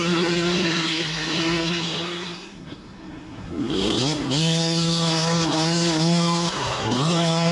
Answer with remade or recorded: remade